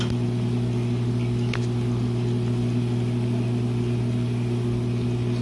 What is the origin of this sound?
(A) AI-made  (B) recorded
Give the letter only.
B